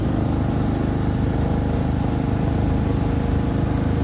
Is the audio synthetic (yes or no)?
no